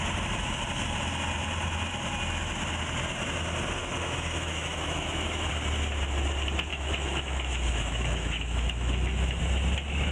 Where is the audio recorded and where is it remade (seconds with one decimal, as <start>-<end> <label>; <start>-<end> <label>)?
0.0-3.8 recorded; 3.8-5.5 remade; 5.5-6.7 recorded; 6.7-9.4 remade; 9.4-10.1 recorded